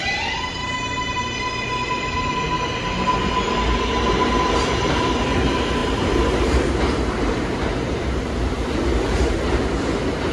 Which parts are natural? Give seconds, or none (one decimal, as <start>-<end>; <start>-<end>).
1.2-5.8; 9.8-10.3